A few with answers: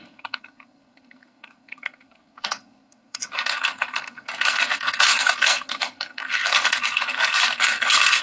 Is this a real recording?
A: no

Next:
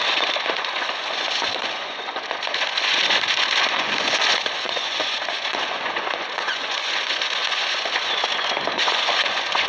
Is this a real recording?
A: no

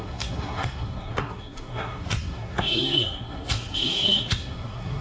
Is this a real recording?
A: no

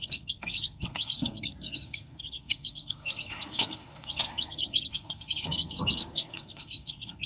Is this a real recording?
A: no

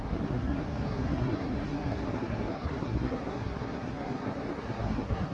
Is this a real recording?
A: no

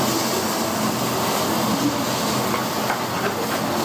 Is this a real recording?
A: yes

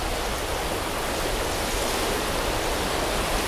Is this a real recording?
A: yes